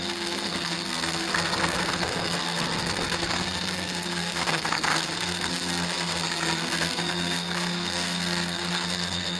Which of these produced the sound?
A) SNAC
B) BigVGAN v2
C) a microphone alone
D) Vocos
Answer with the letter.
A